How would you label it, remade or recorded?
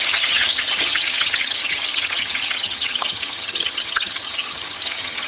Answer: remade